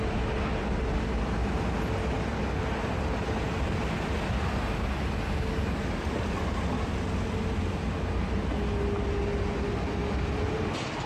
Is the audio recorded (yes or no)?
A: yes